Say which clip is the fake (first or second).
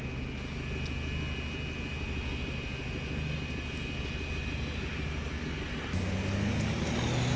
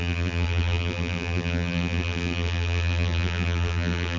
second